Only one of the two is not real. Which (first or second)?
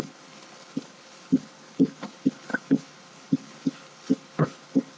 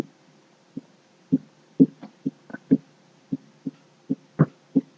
first